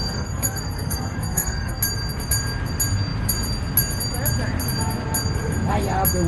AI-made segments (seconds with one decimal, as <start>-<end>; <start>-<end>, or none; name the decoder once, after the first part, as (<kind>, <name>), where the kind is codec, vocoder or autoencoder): 0.0-1.8 (codec, SNAC)